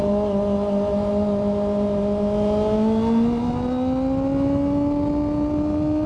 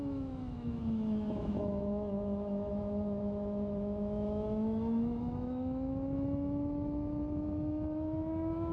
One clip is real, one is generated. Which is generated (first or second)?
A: second